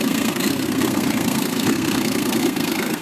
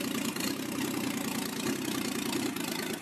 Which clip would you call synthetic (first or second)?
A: first